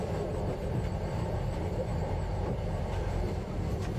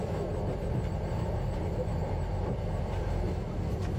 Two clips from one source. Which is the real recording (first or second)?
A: second